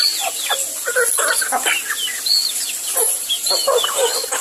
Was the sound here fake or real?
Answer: real